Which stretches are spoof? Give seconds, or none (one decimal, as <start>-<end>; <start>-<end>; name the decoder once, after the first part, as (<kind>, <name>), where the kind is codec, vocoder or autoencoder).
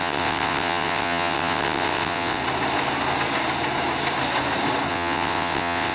0.0-2.4 (vocoder, WaveNeXt); 4.9-5.9